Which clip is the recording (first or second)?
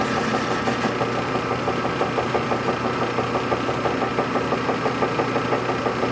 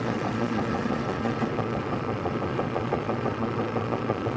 first